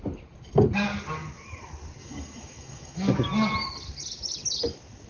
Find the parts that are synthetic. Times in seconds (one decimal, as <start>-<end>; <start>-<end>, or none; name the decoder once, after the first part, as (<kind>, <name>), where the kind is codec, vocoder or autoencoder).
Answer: 2.0-3.1 (autoencoder, DAC-VAE)